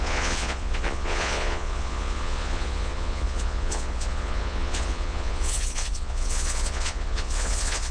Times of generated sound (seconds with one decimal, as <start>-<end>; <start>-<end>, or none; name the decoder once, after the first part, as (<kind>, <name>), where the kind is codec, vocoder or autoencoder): 0.0-7.9 (vocoder, Vocos)